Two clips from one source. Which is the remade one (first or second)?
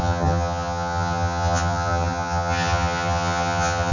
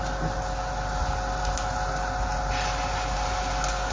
first